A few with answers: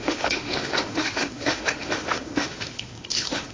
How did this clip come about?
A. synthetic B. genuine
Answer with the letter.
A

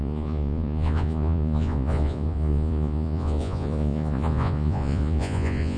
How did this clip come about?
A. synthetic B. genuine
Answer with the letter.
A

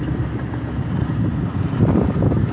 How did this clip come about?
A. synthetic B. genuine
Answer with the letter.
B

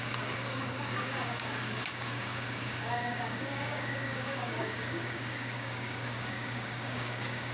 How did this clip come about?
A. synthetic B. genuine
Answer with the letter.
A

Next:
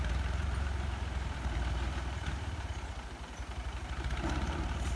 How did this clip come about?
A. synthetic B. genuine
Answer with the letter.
A